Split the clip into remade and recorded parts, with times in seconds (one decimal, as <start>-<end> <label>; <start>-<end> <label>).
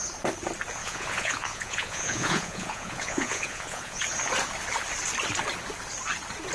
0.0-0.8 recorded; 0.8-4.0 remade; 4.0-6.5 recorded